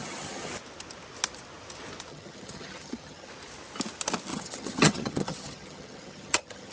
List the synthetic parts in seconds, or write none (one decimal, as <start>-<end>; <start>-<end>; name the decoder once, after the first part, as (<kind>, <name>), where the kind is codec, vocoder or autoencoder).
0.0-0.5 (vocoder, HiFi-GAN); 2.1-3.3; 4.3-6.7